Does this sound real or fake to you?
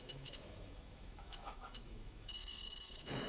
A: fake